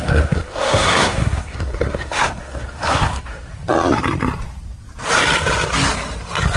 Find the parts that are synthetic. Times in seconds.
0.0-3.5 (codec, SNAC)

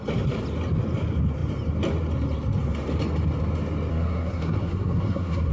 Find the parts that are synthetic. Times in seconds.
3.9-5.5 (codec, SNAC)

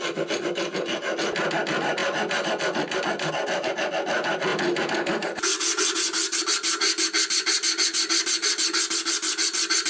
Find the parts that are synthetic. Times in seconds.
4.5-6.4 (vocoder, BigVGAN v2); 8.4-9.9

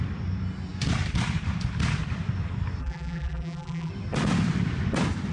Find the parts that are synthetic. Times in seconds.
2.8-3.9 (vocoder, BigVGAN v2)

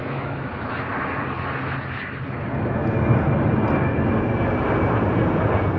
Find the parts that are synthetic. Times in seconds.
0.0-0.5 (autoencoder, DAC-VAE)